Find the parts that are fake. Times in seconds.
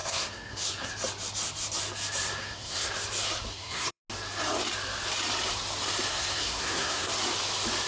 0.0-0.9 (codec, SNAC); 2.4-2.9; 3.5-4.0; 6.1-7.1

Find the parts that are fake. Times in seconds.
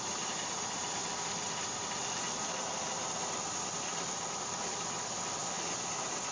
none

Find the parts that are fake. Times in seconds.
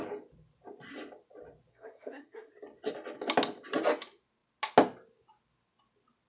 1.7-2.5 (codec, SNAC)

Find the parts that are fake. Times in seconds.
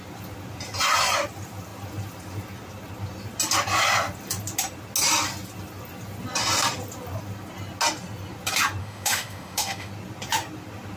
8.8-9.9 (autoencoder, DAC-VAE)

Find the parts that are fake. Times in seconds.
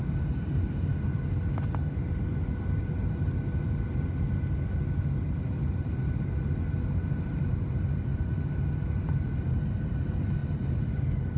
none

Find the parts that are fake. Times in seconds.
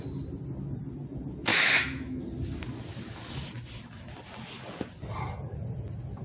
1.5-2.2 (autoencoder, DAC-VAE)